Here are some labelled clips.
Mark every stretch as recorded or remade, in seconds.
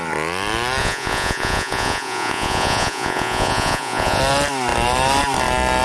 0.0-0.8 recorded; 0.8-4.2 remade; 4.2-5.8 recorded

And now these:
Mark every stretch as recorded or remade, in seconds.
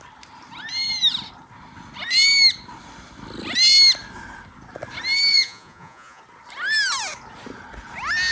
0.0-5.3 recorded; 5.3-6.2 remade; 6.2-8.3 recorded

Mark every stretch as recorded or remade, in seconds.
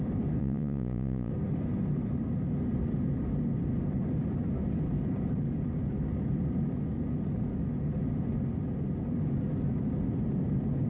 0.0-0.4 recorded; 0.4-1.3 remade; 1.3-10.9 recorded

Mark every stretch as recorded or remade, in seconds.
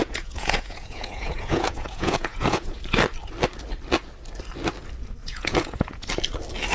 0.0-2.8 remade; 2.8-5.2 recorded; 5.2-6.1 remade; 6.1-6.7 recorded